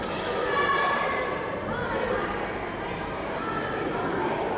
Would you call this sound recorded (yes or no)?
yes